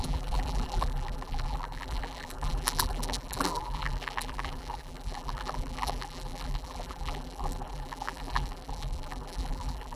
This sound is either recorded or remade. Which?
remade